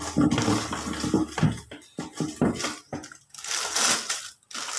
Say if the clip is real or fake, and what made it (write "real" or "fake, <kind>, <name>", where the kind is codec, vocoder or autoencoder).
real